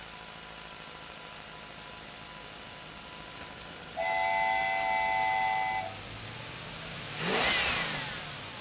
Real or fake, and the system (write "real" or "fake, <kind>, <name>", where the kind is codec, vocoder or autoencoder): real